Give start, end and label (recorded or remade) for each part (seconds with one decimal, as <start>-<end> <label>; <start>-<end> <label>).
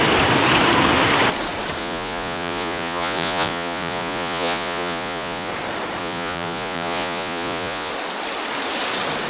0.0-1.8 recorded; 1.8-5.5 remade; 5.5-6.0 recorded; 6.0-7.9 remade; 7.9-9.3 recorded